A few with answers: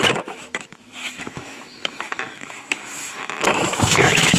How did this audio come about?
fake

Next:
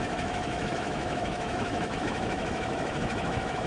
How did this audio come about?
fake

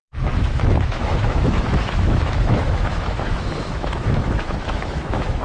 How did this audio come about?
fake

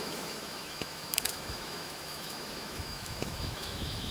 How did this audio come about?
fake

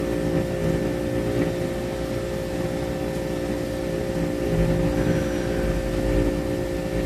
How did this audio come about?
real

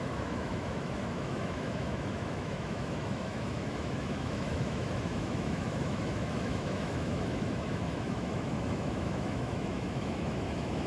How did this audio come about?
fake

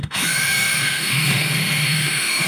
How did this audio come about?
fake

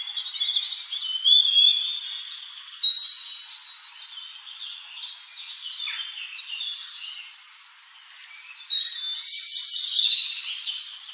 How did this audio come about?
real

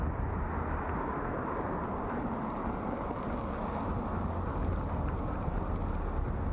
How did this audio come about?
real